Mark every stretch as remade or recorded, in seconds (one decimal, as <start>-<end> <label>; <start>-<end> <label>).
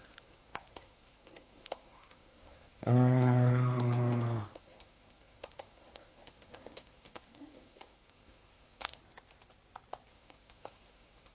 0.0-9.0 remade; 9.0-10.1 recorded; 10.1-11.3 remade